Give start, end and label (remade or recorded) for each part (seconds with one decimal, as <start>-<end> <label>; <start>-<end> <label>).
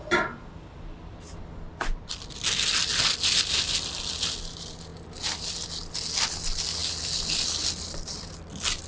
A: 0.0-8.9 recorded